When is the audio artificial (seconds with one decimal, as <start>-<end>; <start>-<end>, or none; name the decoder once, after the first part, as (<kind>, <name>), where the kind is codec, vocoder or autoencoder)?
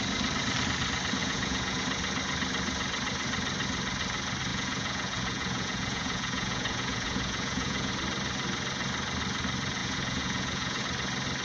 1.2-1.8 (vocoder, Vocos); 4.5-7.9; 9.8-10.8